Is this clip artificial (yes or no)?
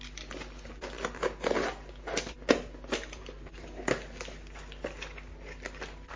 no